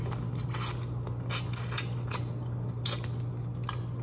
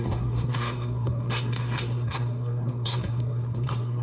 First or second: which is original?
first